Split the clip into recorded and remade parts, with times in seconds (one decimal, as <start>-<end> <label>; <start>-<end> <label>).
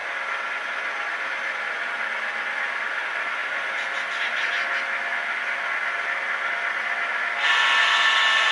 0.0-1.1 recorded; 1.1-1.6 remade; 1.6-3.4 recorded; 3.4-4.5 remade; 4.5-8.5 recorded